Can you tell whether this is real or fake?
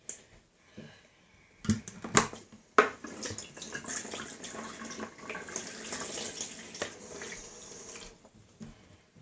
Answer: real